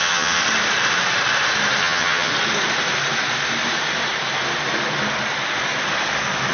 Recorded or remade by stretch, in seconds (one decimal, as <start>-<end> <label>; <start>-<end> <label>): 0.0-0.4 remade; 0.4-1.8 recorded; 1.8-2.3 remade; 2.3-6.5 recorded